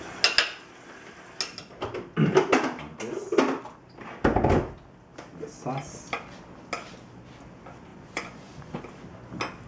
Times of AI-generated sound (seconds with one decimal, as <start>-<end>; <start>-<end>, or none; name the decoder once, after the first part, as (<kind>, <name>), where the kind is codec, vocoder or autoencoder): 7.9-8.8 (vocoder, Vocos)

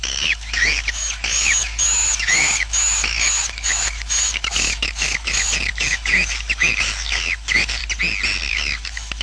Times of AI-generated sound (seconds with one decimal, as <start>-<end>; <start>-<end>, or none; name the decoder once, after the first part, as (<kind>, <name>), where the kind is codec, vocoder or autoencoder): 0.0-7.8 (autoencoder, DAC-VAE); 8.5-9.2

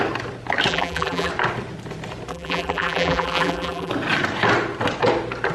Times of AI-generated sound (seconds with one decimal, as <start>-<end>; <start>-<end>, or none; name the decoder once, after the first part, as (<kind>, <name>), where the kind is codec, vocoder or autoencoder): 0.7-1.3 (vocoder, BigVGAN v2); 2.3-3.9

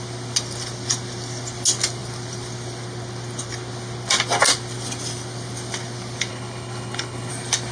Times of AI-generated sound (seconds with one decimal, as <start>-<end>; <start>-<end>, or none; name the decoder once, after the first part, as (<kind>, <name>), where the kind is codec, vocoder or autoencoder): 6.3-7.3 (codec, HILCodec)

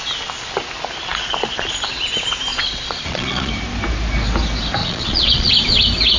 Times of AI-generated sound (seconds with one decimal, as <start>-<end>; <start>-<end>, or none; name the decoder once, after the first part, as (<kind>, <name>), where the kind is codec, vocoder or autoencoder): 2.5-3.5 (vocoder, Vocos); 4.8-5.5

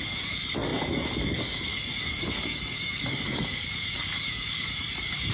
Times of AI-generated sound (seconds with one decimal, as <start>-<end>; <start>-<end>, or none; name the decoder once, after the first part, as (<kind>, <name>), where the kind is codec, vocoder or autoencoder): 0.0-5.3 (codec, DAC)

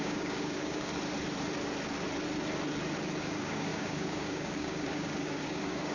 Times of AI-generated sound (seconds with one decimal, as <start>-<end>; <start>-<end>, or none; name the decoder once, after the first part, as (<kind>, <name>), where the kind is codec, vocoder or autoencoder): 0.0-0.9 (codec, DAC); 3.2-5.9